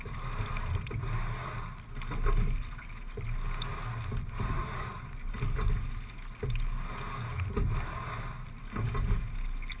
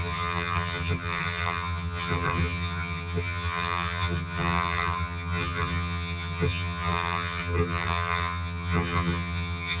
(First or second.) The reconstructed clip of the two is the second